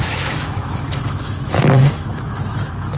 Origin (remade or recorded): remade